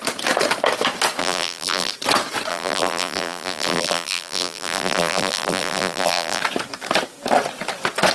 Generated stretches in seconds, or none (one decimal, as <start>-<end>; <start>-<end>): 1.2-1.9; 2.5-6.4